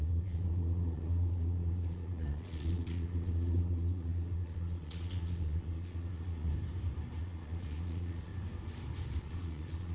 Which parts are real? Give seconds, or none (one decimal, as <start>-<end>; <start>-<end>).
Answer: 6.5-7.2; 8.3-9.2

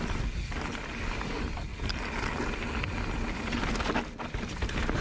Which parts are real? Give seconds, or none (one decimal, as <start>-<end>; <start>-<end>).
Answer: 0.0-5.0

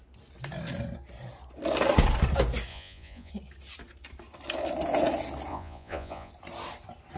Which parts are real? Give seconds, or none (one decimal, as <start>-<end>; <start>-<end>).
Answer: 0.0-2.7; 3.3-5.5; 6.3-7.2

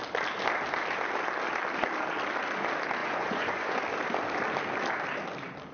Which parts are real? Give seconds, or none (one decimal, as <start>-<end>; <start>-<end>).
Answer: 0.0-3.0; 3.8-5.7

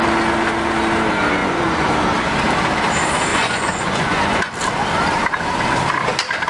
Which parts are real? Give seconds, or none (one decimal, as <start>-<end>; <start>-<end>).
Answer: 0.0-1.4; 1.9-3.3; 4.5-6.5